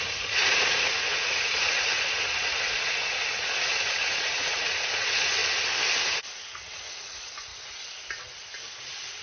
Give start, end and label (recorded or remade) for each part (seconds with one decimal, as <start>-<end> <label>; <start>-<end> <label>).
0.0-5.4 remade; 5.4-6.1 recorded; 6.1-7.5 remade; 7.5-9.2 recorded